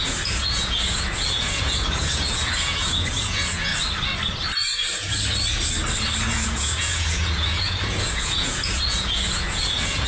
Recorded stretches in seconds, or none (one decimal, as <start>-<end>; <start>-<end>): 3.7-6.2